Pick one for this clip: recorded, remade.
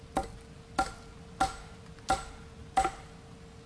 recorded